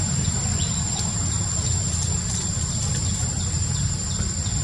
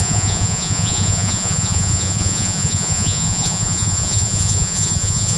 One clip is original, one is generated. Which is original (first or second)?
first